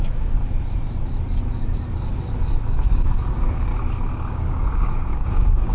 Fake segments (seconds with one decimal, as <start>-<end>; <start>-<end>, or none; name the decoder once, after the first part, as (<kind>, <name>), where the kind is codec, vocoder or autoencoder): 0.0-0.4 (codec, DAC); 2.7-3.7; 4.3-5.7